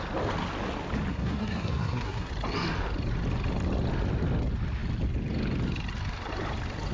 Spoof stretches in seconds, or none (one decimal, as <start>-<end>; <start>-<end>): 1.1-2.3